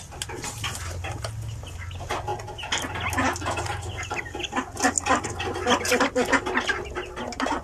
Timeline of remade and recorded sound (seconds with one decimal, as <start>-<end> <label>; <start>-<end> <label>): 0.0-7.6 recorded